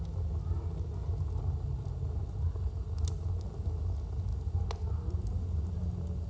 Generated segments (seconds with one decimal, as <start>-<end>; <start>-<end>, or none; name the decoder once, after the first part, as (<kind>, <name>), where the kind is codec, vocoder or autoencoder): none